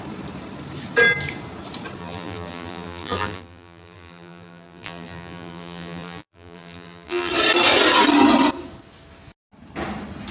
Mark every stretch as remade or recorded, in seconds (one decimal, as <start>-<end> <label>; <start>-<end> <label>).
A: 0.0-2.0 recorded; 2.0-7.3 remade; 7.3-10.3 recorded